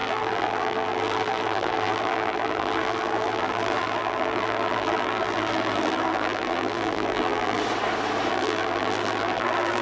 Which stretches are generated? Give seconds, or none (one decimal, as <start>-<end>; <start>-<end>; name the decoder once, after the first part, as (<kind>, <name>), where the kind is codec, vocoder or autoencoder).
0.0-7.6 (vocoder, BigVGAN v2); 8.3-9.8